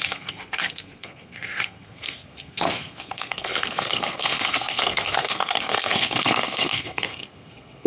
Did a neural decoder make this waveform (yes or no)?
yes